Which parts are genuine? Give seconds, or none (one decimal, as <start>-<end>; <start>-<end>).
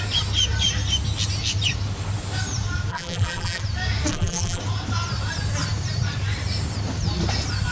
0.0-2.9; 3.6-4.1; 4.6-7.7